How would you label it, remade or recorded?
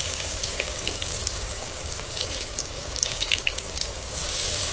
remade